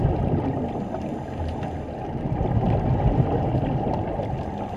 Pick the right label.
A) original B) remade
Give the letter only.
A